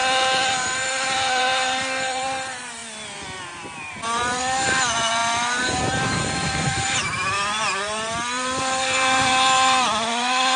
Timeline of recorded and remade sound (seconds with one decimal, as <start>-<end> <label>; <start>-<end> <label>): 0.0-0.6 recorded; 0.6-2.8 remade; 2.8-3.8 recorded; 3.8-10.6 remade